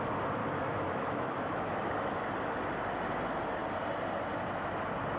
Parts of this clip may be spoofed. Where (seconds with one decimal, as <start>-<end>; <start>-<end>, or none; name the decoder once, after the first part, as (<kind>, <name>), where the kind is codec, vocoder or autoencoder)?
0.4-1.9 (autoencoder, DAC-VAE)